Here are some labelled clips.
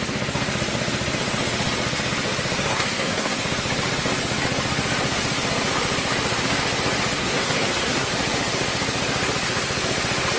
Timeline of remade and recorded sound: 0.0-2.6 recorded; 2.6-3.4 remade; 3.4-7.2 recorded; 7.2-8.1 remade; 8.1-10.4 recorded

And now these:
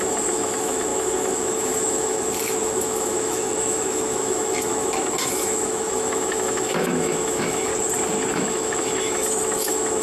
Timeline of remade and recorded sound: 0.0-7.7 remade; 7.7-8.3 recorded; 8.3-10.0 remade

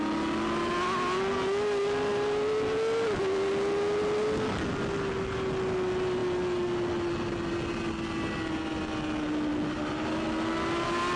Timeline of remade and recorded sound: 0.0-11.2 recorded